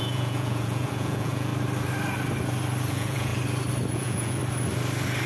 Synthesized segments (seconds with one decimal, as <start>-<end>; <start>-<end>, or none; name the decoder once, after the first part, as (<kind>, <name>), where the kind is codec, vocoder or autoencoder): 0.0-1.5 (vocoder, Vocos); 2.9-3.3; 3.9-4.4